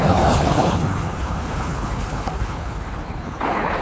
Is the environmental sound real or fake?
fake